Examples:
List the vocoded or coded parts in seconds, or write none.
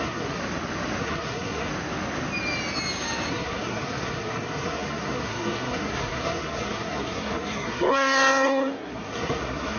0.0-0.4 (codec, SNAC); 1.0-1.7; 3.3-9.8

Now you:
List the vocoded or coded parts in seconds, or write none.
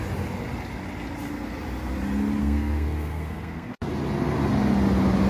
2.4-3.9 (codec, SNAC)